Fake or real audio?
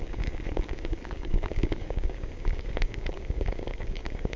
fake